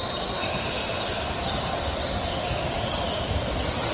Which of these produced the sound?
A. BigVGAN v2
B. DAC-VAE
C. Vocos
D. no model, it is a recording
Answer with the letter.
A